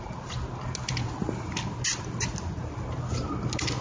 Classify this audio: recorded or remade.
recorded